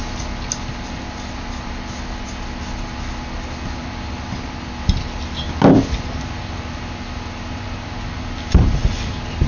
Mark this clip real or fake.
real